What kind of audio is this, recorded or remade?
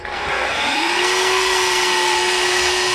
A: remade